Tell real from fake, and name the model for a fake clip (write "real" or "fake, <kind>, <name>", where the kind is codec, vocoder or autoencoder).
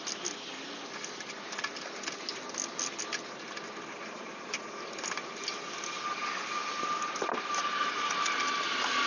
real